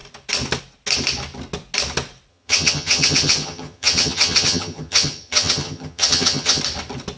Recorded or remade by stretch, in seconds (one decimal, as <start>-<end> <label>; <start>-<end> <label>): 0.0-2.3 recorded; 2.3-6.6 remade; 6.6-7.2 recorded